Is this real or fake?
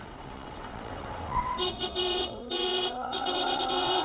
fake